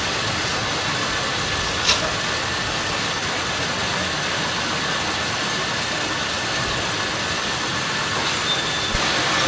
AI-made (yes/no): no